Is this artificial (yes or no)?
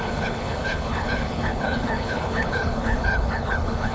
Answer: yes